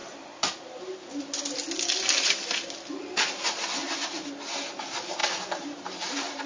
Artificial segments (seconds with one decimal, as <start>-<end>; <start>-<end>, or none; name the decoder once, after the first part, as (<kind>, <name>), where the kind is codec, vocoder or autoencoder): 0.0-1.2 (vocoder, BigVGAN v2); 5.2-6.5